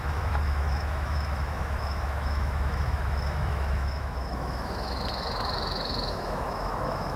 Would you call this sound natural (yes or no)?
no